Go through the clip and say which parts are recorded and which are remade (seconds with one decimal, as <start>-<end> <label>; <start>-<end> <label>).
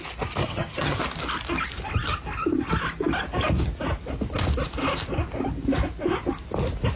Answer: 0.0-0.4 recorded; 0.4-1.0 remade; 1.0-7.0 recorded